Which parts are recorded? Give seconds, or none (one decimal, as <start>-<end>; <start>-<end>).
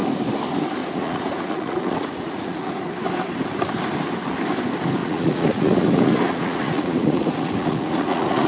0.0-0.8; 2.7-5.0